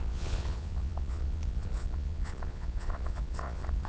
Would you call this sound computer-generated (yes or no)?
yes